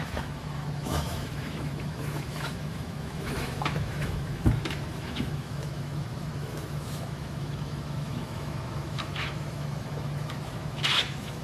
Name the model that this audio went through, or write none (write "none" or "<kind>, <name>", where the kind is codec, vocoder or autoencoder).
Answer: autoencoder, DAC-VAE